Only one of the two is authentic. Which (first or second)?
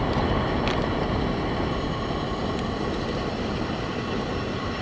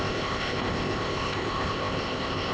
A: first